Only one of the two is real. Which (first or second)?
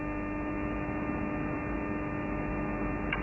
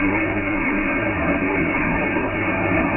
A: first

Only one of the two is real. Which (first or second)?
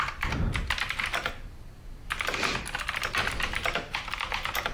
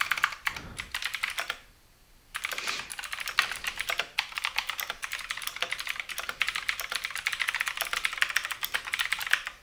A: first